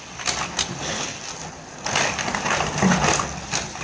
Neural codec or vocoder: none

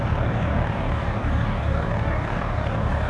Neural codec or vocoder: codec, DAC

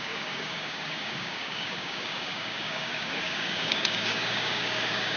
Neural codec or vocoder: codec, DAC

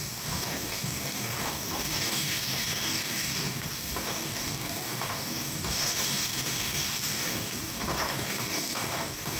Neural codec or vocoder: codec, DAC